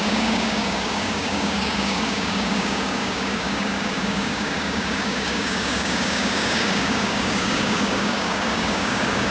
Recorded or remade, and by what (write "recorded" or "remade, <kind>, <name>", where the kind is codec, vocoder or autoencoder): remade, codec, DAC